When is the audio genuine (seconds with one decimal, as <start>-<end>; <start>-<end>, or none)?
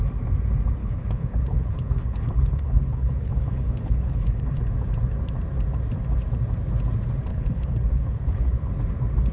0.0-0.8; 4.6-7.3; 8.7-9.3